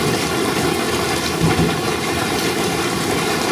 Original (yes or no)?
yes